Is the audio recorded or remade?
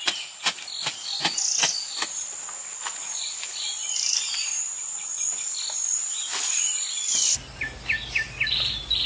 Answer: recorded